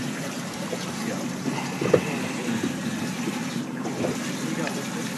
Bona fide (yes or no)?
yes